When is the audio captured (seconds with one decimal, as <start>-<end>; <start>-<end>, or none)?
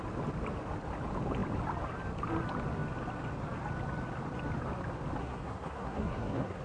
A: 0.0-5.2